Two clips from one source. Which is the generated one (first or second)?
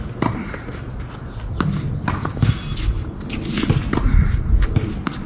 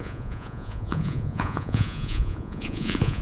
second